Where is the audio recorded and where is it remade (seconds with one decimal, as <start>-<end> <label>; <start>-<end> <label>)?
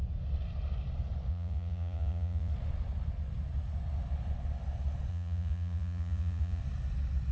0.0-1.3 recorded; 1.3-2.5 remade; 2.5-5.1 recorded; 5.1-6.6 remade; 6.6-7.3 recorded